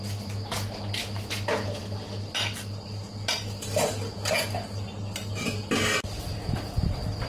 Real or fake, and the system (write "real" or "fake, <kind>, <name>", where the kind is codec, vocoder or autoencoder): real